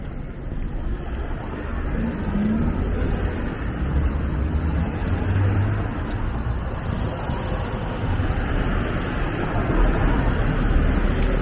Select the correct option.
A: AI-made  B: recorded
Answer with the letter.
B